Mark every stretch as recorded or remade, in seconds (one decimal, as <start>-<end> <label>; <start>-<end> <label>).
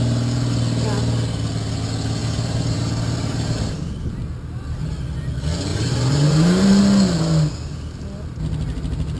0.0-2.2 recorded; 2.2-3.9 remade; 3.9-5.7 recorded; 5.7-6.8 remade; 6.8-9.2 recorded